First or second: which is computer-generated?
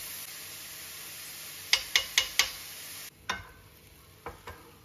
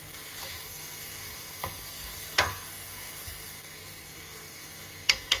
second